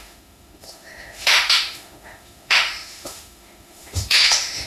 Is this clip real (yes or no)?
no